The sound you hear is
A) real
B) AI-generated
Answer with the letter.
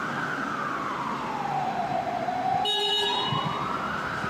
A